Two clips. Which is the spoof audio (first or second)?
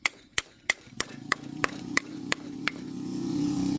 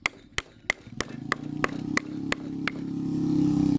first